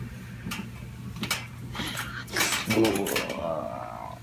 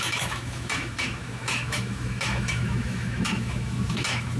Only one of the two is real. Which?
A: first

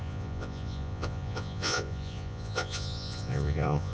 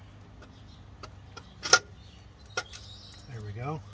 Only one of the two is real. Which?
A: second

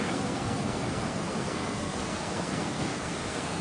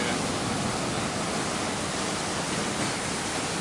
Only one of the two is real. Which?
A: second